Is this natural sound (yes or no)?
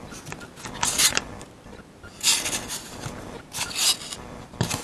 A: yes